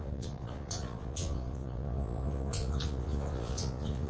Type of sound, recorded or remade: remade